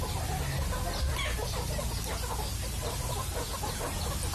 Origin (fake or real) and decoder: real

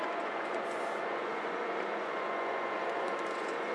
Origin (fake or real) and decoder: fake, vocoder, Vocos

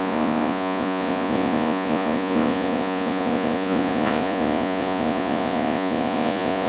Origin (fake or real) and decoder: fake, vocoder, Vocos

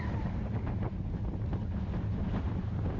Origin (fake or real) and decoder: real